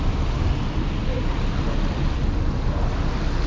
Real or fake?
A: real